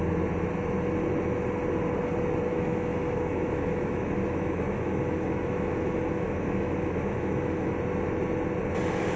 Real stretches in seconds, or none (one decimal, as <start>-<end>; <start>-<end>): 0.0-2.5; 7.7-9.2